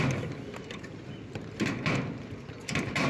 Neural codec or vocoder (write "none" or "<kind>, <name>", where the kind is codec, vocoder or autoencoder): none